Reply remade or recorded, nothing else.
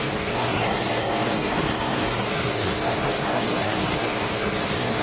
remade